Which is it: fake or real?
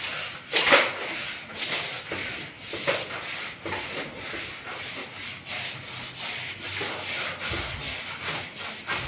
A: real